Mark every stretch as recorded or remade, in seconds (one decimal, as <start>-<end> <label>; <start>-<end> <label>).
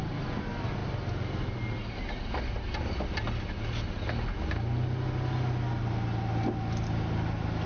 0.0-7.7 recorded